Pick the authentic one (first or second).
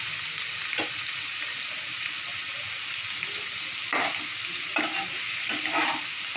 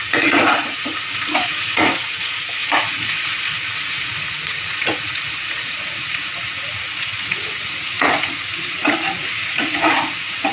first